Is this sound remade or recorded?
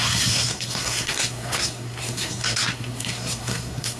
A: remade